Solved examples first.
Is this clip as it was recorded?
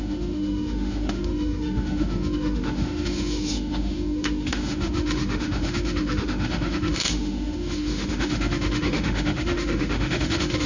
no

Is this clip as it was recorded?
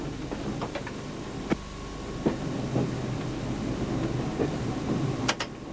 yes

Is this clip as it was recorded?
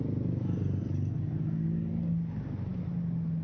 yes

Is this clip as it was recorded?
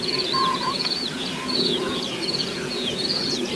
no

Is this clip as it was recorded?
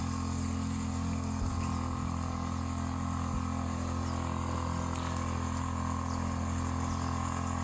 yes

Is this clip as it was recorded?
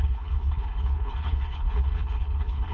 no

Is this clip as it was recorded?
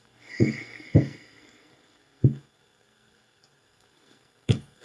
no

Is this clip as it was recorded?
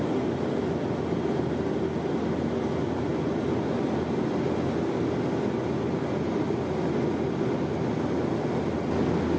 yes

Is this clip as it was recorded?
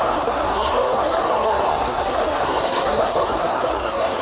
no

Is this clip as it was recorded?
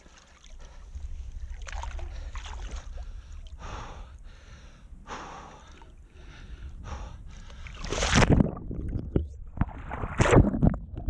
yes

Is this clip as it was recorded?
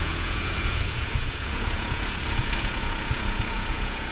no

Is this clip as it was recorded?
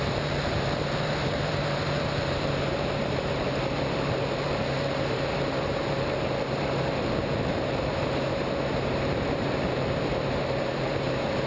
no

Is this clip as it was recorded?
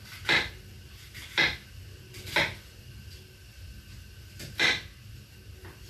yes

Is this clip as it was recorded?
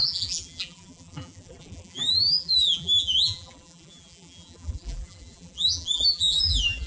no